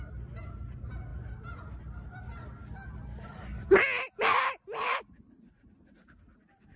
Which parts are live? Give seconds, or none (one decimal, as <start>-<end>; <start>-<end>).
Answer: 0.0-6.8